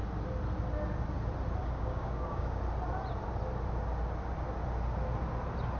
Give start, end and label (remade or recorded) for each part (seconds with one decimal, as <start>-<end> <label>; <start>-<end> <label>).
0.0-1.6 recorded; 1.6-2.6 remade; 2.6-5.8 recorded